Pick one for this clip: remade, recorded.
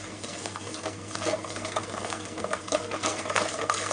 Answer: remade